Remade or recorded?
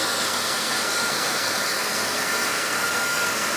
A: remade